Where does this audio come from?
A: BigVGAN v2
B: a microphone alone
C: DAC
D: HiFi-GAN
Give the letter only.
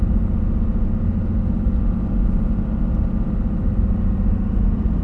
B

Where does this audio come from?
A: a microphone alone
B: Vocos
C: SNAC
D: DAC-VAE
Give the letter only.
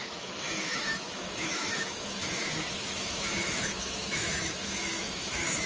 D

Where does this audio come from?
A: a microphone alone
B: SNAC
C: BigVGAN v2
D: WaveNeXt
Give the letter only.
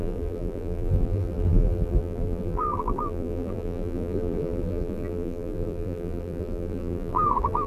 C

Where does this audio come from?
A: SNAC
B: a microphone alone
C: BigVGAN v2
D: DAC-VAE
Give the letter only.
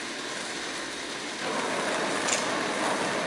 B